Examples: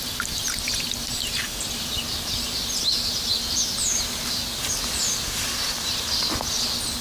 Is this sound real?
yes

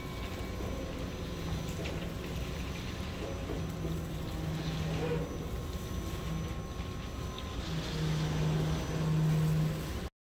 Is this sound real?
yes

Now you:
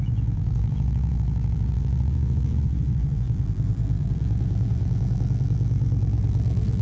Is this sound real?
no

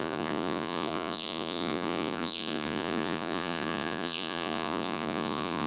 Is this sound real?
no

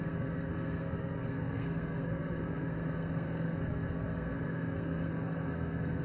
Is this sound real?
no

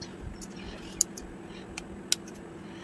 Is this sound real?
yes